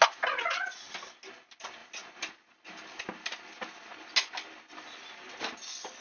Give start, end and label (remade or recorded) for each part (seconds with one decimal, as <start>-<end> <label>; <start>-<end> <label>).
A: 0.0-6.0 recorded